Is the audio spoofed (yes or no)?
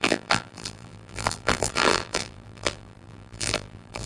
yes